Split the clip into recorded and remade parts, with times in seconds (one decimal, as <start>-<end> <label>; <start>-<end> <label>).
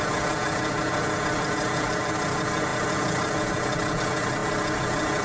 0.0-5.2 recorded